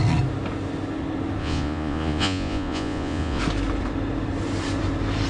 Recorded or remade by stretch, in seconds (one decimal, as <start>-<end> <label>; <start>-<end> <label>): 0.0-1.4 recorded; 1.4-3.4 remade; 3.4-5.3 recorded